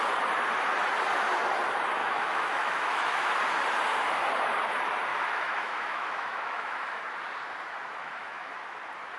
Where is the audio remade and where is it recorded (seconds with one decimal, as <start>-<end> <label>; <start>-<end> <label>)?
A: 0.0-2.0 recorded; 2.0-3.3 remade; 3.3-5.1 recorded; 5.1-7.0 remade; 7.0-8.0 recorded; 8.0-8.5 remade; 8.5-9.2 recorded